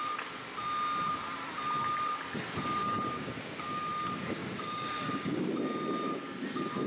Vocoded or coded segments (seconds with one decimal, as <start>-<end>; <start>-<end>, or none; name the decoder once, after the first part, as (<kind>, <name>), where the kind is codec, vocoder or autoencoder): 2.8-3.8 (codec, DAC); 4.4-5.5